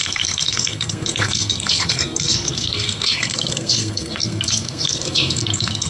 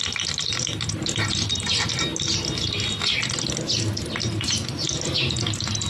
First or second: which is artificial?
first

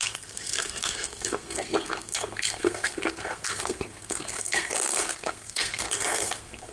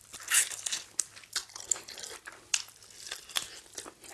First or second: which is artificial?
first